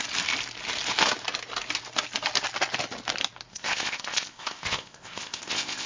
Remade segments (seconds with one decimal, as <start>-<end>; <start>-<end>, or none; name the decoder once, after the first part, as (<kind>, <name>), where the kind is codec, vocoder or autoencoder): 3.5-5.9 (codec, ZipCodec)